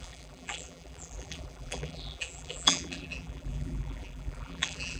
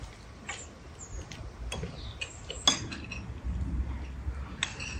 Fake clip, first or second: first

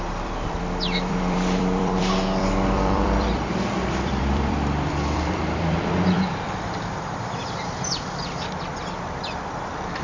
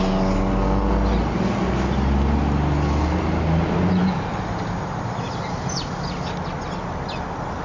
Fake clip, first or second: first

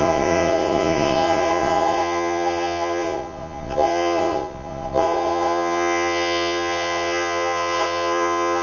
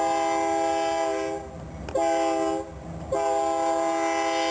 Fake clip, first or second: first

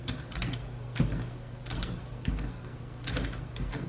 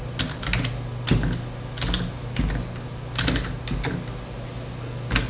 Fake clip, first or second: first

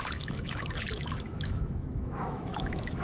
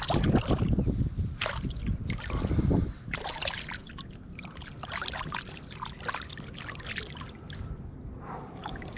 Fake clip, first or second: first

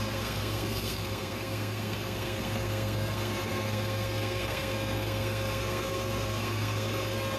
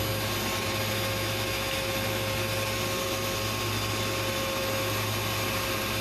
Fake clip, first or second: first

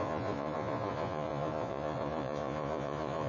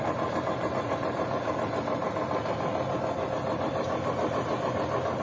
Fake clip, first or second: first